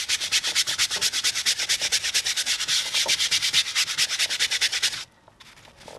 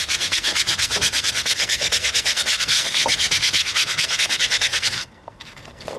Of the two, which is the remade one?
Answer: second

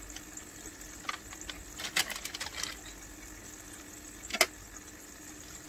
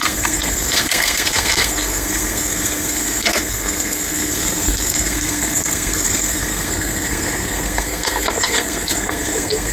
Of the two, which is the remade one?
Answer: second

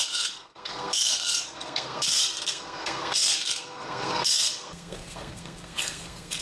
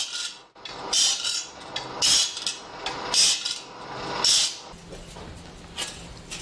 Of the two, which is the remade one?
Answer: first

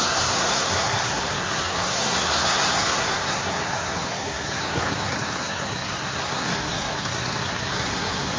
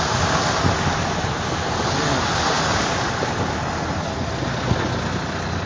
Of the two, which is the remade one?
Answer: first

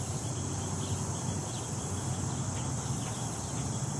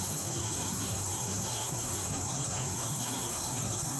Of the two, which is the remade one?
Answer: second